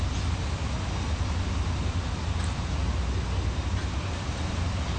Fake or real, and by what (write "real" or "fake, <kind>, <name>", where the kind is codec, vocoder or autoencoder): real